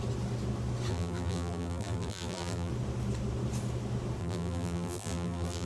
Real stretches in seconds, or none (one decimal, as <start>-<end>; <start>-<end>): 0.0-0.9; 2.7-4.2